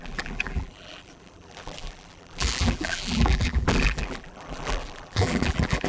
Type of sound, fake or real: fake